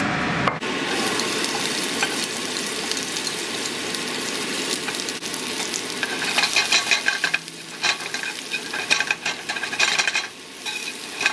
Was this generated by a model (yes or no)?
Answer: no